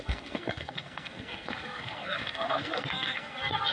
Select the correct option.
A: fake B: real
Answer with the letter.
A